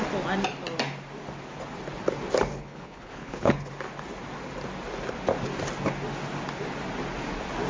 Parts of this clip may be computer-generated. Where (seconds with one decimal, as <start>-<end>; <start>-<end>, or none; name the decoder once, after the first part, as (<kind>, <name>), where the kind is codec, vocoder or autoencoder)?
2.5-3.7 (codec, HILCodec)